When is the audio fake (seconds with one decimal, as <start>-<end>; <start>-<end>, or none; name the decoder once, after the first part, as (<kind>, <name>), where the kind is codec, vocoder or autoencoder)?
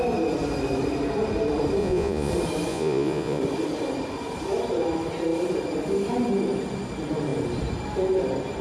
1.8-2.3 (vocoder, Vocos); 2.7-3.4